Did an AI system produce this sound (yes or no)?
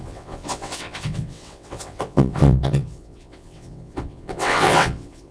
yes